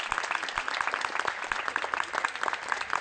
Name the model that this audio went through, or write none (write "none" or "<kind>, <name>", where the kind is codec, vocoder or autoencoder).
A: none